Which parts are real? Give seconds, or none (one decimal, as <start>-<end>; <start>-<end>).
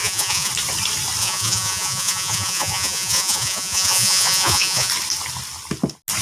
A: 0.5-1.2; 4.9-6.2